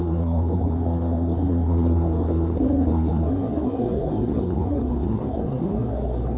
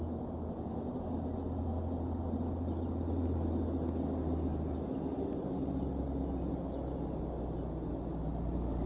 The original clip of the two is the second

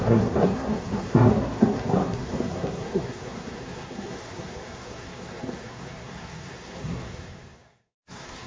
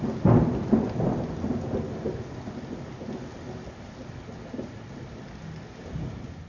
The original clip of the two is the second